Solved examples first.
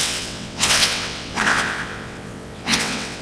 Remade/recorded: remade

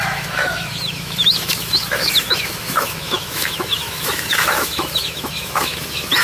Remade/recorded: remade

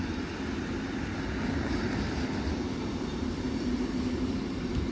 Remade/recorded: recorded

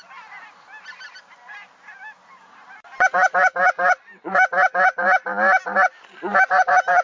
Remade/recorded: recorded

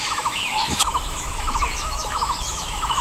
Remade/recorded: remade